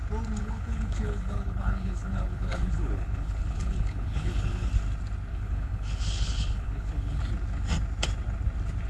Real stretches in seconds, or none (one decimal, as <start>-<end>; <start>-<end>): 0.0-0.4; 4.7-5.3; 7.2-8.9